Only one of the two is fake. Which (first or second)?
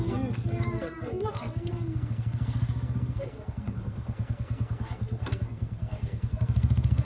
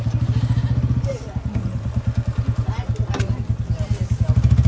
first